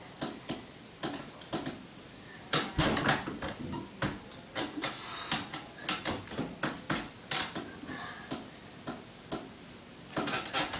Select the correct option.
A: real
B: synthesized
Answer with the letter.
A